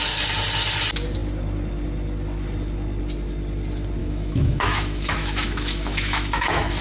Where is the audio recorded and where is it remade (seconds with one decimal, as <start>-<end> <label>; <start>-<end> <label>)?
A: 0.0-4.0 recorded; 4.0-6.8 remade